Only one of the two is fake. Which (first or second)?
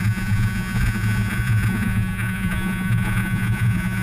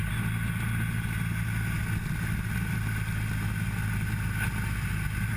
first